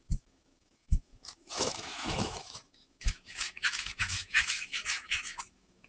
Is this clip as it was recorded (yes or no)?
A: no